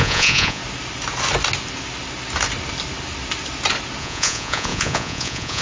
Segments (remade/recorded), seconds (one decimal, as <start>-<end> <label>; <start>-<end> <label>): 0.0-0.6 remade; 0.6-4.0 recorded; 4.0-5.6 remade